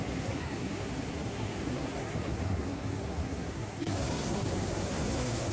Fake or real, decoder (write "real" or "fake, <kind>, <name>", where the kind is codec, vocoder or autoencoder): fake, codec, SNAC